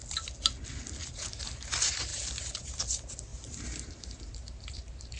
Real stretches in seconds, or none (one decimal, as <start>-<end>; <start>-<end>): 0.0-1.0; 1.5-2.1; 2.8-3.3